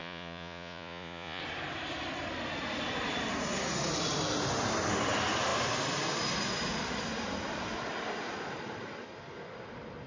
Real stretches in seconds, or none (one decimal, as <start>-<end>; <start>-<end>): 1.4-10.1